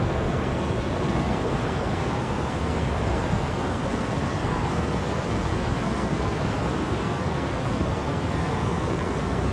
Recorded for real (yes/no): no